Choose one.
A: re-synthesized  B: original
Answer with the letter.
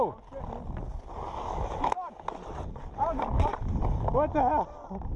B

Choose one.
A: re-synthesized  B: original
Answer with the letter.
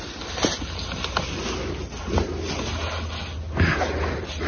B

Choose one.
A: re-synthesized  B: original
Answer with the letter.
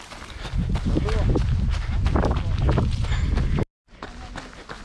B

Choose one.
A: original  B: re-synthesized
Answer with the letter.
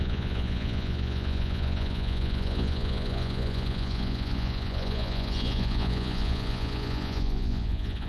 B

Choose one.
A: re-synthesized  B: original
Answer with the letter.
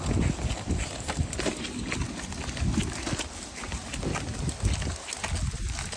B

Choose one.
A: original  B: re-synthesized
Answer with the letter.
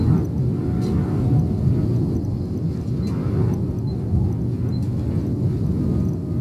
A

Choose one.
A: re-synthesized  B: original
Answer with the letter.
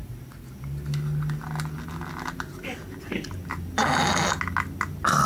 B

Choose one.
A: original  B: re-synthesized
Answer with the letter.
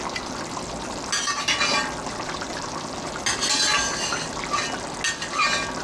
A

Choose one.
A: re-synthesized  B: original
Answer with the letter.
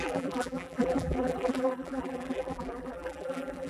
A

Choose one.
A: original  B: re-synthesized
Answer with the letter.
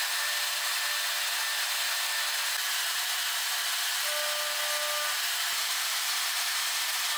A